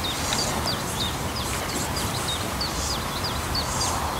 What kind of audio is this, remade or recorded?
recorded